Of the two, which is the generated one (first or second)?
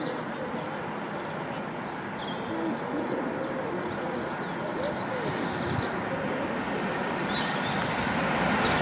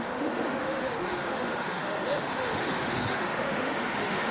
second